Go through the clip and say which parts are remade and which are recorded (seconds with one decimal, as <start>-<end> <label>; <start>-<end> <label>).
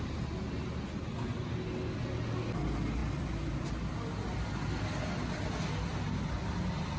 0.0-7.0 recorded